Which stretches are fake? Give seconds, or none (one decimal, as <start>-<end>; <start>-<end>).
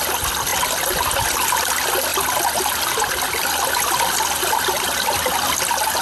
none